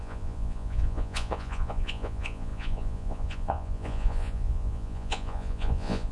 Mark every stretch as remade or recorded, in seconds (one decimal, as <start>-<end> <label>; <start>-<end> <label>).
0.0-6.1 remade